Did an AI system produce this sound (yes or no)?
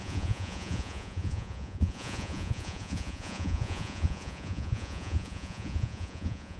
yes